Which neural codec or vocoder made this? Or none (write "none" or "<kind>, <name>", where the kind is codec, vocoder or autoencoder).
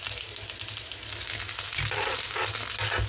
none